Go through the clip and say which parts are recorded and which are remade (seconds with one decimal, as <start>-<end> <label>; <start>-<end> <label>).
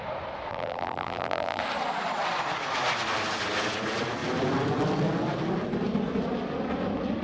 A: 0.0-0.5 recorded; 0.5-1.6 remade; 1.6-7.2 recorded